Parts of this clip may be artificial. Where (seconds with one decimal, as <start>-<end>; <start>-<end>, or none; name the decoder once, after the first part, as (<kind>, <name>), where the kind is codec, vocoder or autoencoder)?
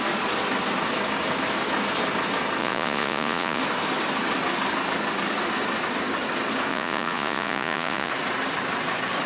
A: 2.6-3.6 (vocoder, Vocos); 6.7-8.1